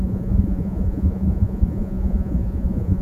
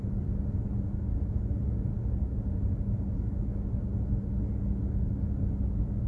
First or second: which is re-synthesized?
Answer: first